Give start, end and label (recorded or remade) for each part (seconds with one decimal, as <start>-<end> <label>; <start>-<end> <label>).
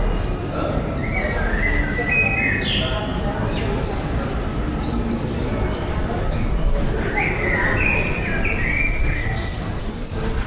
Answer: 0.0-10.5 recorded